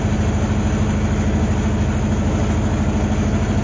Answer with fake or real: real